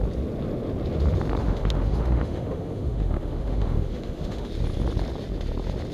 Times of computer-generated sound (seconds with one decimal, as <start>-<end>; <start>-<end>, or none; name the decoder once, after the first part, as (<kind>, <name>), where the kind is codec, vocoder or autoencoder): 1.4-4.5 (autoencoder, DAC-VAE)